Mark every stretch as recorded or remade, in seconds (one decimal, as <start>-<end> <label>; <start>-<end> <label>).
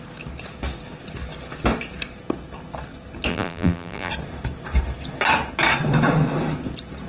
0.0-3.3 recorded; 3.3-4.1 remade; 4.1-7.1 recorded